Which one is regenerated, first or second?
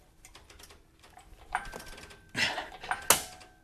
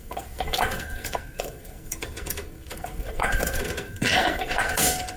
second